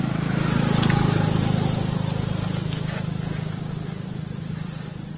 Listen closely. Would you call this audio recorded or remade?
recorded